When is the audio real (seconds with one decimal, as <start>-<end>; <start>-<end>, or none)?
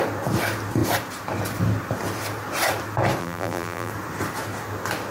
0.0-3.2; 3.9-5.1